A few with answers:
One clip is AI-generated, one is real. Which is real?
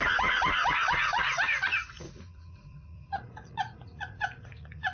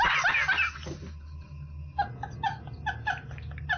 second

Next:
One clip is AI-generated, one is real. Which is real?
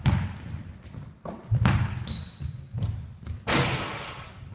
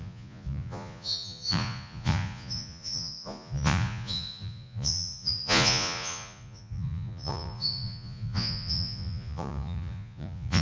first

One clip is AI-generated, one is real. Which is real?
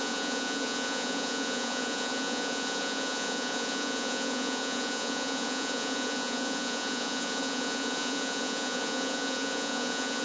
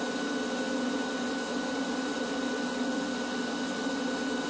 second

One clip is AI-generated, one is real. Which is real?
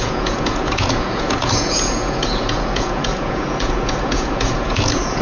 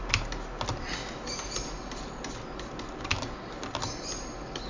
second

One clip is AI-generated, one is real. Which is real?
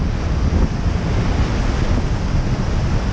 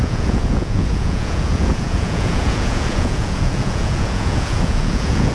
first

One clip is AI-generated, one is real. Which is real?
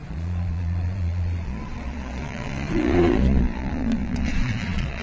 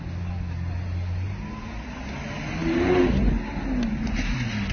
second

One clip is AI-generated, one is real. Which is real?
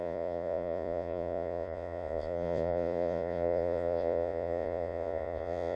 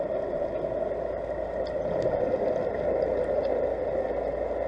second